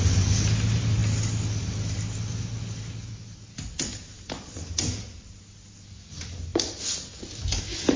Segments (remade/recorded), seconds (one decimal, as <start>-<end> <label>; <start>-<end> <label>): 0.0-8.0 recorded